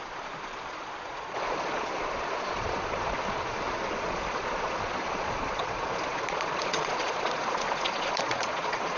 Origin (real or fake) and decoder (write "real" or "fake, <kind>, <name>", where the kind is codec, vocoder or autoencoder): fake, vocoder, Vocos